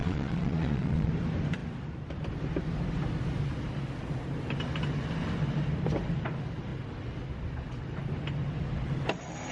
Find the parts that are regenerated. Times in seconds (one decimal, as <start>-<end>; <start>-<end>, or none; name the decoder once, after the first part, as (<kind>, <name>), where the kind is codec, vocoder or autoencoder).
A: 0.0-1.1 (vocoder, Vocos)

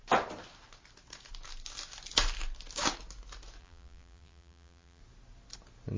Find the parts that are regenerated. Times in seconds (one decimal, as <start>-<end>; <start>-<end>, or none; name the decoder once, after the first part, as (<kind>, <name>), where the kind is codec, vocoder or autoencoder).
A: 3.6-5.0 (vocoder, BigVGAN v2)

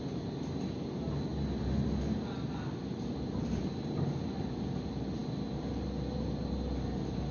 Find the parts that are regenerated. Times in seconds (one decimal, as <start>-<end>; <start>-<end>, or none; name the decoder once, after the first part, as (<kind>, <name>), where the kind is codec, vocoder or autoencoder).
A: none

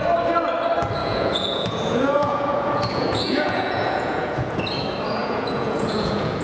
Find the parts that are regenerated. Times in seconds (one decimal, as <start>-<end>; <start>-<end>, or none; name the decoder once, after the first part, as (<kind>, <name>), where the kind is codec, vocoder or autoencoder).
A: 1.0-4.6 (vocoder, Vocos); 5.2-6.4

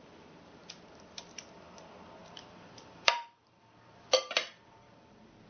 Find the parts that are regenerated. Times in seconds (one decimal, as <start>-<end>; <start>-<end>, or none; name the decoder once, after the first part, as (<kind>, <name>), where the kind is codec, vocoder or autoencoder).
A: 2.2-5.5 (vocoder, BigVGAN v2)